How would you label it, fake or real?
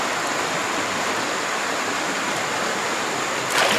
real